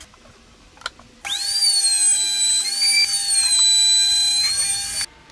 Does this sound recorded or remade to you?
recorded